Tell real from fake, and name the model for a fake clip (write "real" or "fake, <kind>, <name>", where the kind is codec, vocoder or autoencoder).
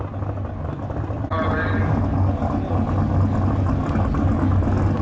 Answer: real